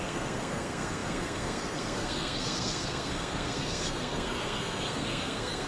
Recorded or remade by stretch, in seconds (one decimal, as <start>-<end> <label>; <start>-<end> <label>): 0.0-5.7 remade